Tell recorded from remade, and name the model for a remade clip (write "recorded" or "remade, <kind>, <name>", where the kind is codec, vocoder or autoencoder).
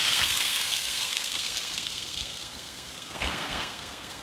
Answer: remade, codec, SNAC